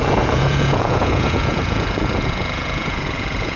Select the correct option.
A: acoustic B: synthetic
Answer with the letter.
B